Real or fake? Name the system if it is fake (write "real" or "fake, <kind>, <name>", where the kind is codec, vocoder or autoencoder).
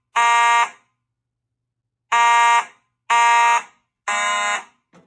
real